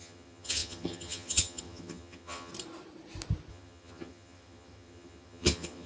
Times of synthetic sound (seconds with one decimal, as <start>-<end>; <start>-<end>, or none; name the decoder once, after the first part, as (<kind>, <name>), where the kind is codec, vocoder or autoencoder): 0.0-2.5 (vocoder, HiFi-GAN); 3.5-5.9